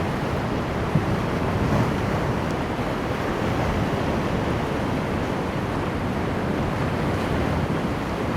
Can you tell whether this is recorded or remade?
remade